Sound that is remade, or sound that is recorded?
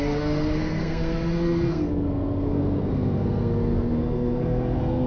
remade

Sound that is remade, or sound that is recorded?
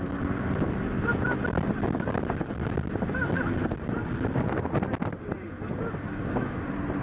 recorded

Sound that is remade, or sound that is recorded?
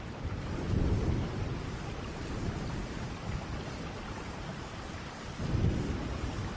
remade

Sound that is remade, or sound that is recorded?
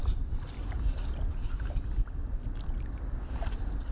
recorded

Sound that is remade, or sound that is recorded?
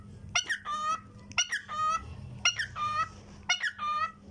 recorded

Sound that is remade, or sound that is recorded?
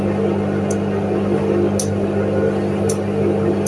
recorded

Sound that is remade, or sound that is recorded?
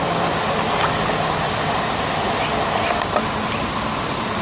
recorded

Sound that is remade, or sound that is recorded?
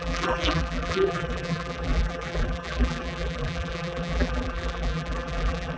remade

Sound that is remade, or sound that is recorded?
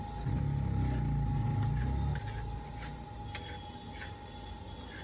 recorded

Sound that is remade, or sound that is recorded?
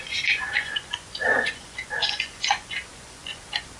remade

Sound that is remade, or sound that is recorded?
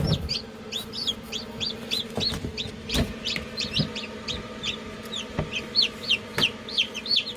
remade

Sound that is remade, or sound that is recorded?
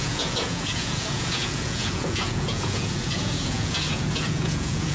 remade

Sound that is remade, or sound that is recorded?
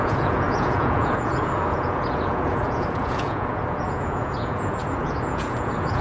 remade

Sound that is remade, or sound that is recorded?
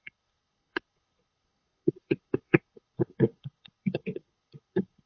remade